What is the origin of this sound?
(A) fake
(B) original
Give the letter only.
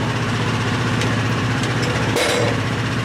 A